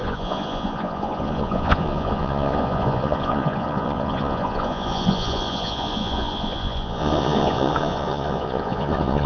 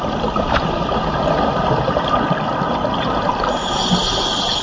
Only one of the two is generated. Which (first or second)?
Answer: first